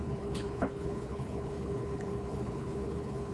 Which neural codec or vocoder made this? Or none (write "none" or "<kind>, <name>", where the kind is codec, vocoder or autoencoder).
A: codec, HILCodec